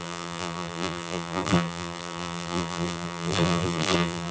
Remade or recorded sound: remade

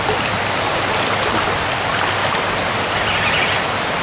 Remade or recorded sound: recorded